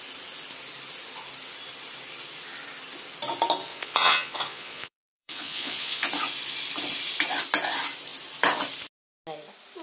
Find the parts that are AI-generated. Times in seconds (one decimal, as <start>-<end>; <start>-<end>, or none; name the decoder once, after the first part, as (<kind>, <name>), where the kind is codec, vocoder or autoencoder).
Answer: 3.7-6.1 (vocoder, Vocos)